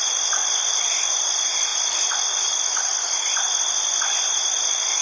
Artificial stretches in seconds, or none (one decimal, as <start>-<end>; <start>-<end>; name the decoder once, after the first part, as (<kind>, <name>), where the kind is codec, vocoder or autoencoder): none